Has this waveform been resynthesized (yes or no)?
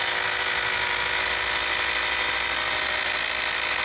no